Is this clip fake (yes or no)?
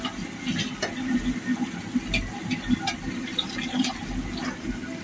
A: no